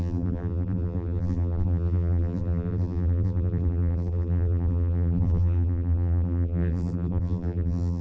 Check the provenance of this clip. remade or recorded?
remade